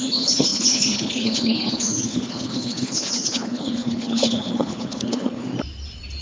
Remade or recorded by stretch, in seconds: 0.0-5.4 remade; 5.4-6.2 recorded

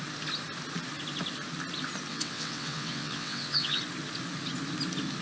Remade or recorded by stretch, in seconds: 0.0-2.1 recorded; 2.1-3.8 remade; 3.8-5.2 recorded

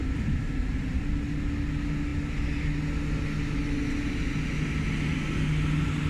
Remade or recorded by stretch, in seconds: 0.0-6.1 recorded

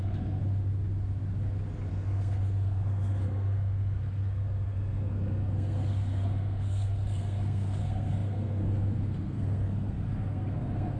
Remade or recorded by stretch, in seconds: 0.0-0.4 remade; 0.4-1.9 recorded; 1.9-11.0 remade

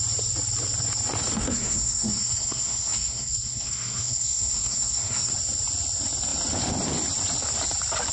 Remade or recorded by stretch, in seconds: 0.0-1.4 recorded; 1.4-5.3 remade; 5.3-8.1 recorded

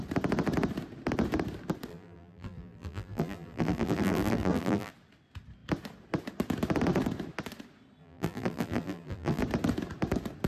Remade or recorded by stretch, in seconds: 0.0-1.9 recorded; 1.9-4.9 remade; 4.9-8.0 recorded; 8.0-9.4 remade; 9.4-10.5 recorded